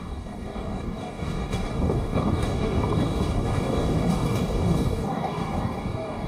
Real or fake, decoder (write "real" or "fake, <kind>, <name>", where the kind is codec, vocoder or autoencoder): fake, codec, DAC